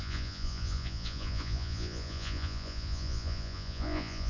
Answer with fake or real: fake